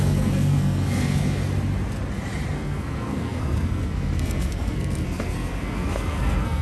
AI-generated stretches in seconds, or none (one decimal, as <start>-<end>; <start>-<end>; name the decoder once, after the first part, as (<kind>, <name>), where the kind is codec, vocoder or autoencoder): 0.0-1.4 (codec, SNAC); 2.5-6.6